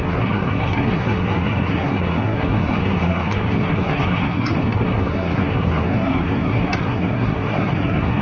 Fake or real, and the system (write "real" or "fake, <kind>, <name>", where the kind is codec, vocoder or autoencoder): fake, codec, SNAC